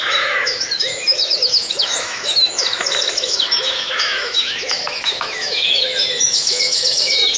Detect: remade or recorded remade